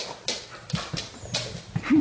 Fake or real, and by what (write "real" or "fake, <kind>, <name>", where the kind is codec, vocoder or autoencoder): real